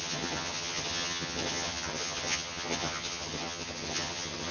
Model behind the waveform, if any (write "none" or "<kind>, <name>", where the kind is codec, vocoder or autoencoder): vocoder, HiFi-GAN